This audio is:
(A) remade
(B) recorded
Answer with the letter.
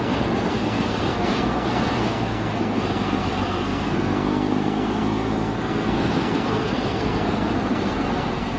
A